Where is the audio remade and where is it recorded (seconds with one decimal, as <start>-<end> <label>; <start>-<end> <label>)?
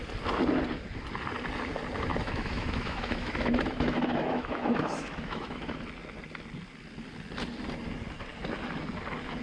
0.0-2.1 recorded; 2.1-5.8 remade; 5.8-9.4 recorded